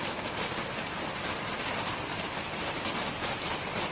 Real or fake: fake